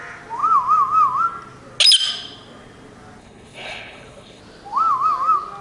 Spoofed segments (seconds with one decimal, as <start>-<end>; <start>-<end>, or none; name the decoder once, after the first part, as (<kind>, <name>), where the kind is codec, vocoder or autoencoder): 3.2-4.4 (codec, HILCodec)